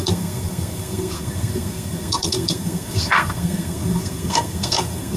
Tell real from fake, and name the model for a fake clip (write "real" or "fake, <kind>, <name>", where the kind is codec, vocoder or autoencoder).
fake, codec, SNAC